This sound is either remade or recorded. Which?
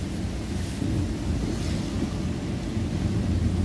recorded